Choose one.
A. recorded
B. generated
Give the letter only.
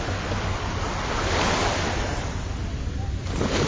A